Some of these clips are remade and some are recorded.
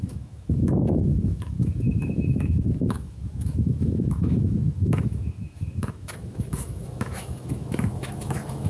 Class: remade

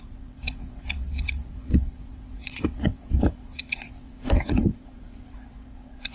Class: remade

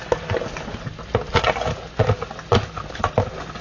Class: recorded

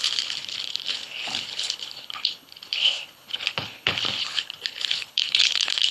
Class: remade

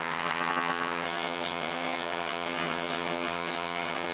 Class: remade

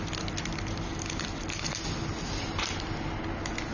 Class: recorded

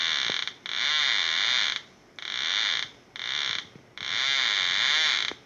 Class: recorded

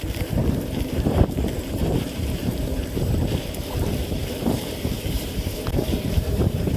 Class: remade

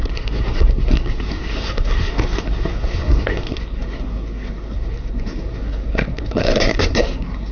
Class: remade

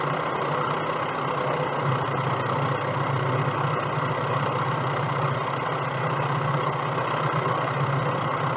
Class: recorded